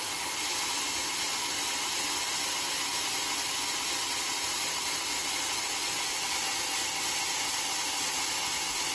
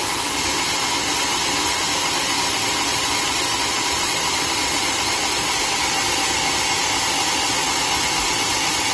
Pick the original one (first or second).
first